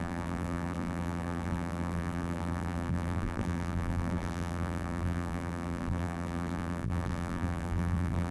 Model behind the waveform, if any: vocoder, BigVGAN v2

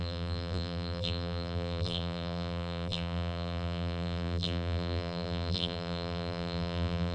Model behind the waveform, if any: vocoder, BigVGAN v2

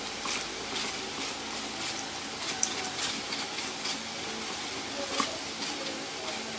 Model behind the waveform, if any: none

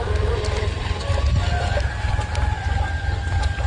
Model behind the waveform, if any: vocoder, BigVGAN v2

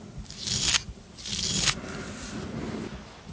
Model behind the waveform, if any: none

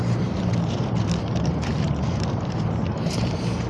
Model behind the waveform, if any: vocoder, BigVGAN v2